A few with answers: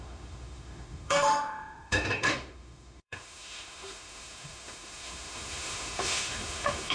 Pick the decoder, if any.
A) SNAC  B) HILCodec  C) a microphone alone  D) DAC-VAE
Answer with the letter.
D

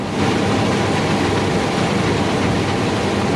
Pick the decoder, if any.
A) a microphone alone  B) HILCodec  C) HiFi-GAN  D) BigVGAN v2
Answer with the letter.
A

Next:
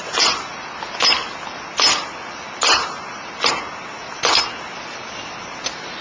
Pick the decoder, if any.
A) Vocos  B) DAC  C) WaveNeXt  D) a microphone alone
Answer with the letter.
D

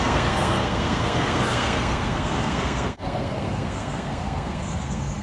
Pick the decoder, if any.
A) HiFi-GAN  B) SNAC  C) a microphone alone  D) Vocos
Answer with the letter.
B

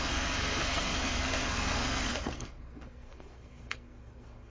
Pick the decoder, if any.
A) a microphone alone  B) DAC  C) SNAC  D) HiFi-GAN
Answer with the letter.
C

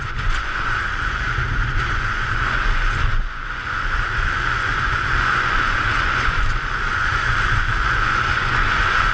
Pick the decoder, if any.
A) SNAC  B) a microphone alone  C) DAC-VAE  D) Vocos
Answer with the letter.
D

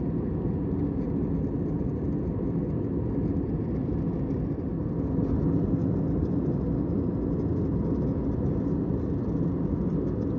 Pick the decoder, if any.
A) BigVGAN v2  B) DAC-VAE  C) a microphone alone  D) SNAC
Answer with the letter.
C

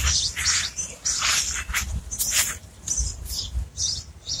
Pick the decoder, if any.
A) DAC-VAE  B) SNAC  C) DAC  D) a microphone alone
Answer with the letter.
D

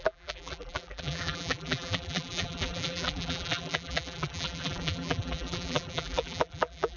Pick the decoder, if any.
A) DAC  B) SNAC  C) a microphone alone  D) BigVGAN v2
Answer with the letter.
D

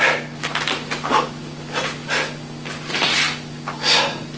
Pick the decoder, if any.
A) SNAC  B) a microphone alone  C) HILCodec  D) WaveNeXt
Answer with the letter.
B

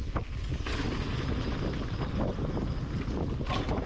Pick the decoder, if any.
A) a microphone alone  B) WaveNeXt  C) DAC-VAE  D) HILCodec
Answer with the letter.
A